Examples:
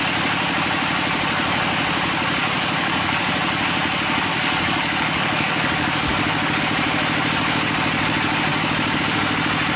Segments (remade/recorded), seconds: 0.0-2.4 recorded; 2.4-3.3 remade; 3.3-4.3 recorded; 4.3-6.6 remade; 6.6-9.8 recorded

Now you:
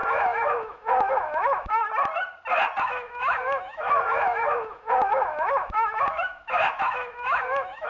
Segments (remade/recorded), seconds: 0.0-1.8 remade; 1.8-2.8 recorded; 2.8-7.9 remade

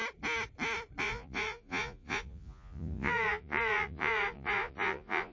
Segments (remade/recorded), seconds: 0.0-1.0 recorded; 1.0-5.3 remade

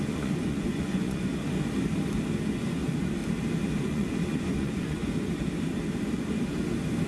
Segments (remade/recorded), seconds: 0.0-1.3 remade; 1.3-2.5 recorded; 2.5-3.2 remade; 3.2-3.8 recorded; 3.8-5.0 remade; 5.0-7.1 recorded

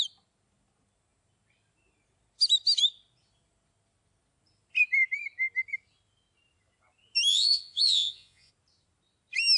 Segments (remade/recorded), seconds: 0.0-7.3 recorded; 7.3-8.5 remade; 8.5-9.6 recorded

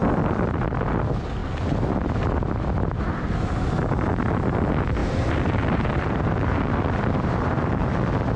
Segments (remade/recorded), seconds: 0.0-5.0 recorded; 5.0-7.9 remade; 7.9-8.4 recorded